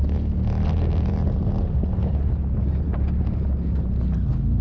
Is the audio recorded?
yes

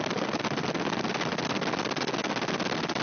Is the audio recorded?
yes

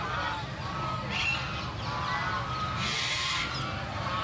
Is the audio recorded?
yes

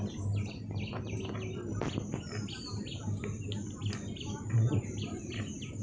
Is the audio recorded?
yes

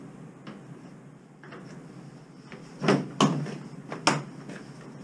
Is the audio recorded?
yes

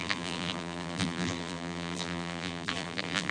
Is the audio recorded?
no